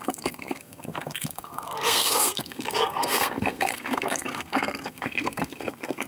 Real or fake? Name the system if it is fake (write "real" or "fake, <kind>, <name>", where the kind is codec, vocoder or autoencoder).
fake, codec, SNAC